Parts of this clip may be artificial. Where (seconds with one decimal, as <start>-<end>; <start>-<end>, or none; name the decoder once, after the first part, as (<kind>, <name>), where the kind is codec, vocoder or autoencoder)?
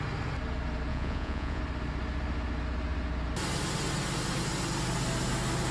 0.9-1.6 (vocoder, Vocos)